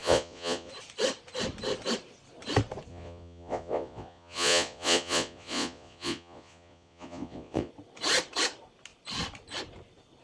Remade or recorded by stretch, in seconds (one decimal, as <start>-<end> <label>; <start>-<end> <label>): 0.0-0.7 remade; 0.7-2.9 recorded; 2.9-7.7 remade; 7.7-10.2 recorded

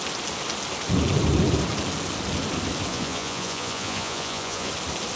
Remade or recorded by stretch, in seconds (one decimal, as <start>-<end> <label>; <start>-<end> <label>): 0.0-2.9 recorded; 2.9-4.7 remade; 4.7-5.2 recorded